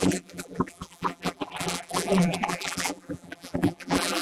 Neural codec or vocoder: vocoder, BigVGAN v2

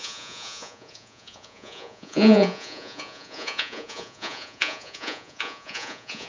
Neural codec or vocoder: vocoder, Vocos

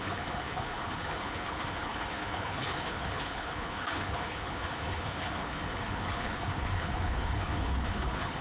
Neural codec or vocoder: codec, HILCodec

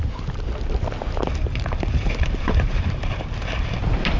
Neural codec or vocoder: vocoder, BigVGAN v2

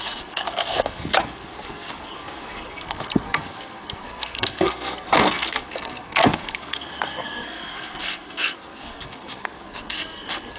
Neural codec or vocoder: codec, SNAC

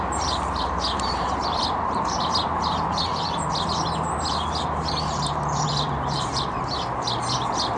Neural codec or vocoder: vocoder, BigVGAN v2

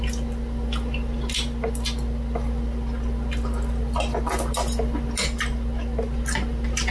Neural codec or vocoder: none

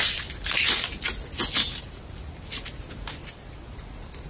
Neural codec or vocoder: none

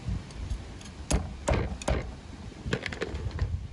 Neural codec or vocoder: none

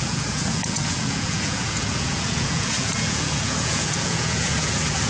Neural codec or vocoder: vocoder, Vocos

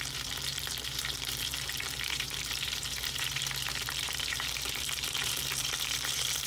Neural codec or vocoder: vocoder, BigVGAN v2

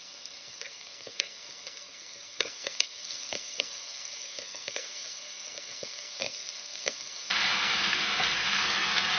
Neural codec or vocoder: codec, SNAC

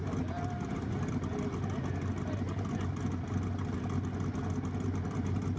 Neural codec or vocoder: none